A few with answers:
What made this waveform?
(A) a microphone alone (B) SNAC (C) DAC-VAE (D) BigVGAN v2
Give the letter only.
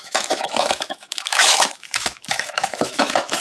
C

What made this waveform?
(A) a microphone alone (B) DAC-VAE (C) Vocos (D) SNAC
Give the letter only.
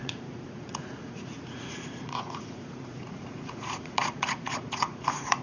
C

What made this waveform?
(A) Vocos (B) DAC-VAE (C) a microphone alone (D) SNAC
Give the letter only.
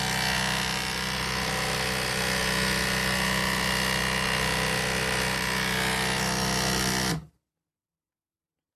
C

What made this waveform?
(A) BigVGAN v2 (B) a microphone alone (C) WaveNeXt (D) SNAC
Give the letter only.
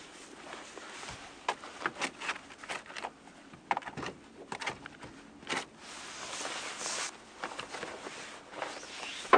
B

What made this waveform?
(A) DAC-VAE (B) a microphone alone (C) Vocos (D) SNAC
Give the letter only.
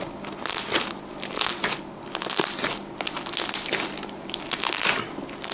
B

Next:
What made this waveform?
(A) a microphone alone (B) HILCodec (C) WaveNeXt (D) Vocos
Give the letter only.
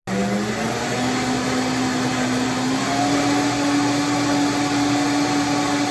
A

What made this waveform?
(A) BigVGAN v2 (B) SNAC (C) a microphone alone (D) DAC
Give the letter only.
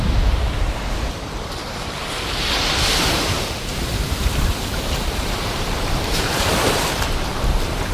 A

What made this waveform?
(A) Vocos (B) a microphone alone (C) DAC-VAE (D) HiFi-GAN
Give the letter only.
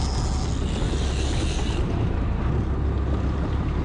B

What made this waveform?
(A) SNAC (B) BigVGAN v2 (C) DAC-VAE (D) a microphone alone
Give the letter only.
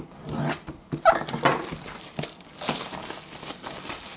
D